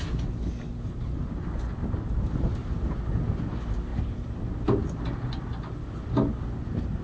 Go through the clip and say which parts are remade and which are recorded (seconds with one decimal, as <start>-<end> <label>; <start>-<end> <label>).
0.0-7.0 recorded